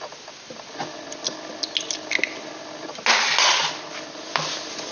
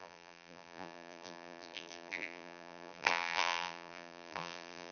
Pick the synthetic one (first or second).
second